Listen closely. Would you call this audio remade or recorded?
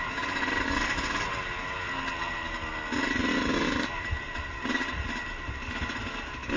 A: recorded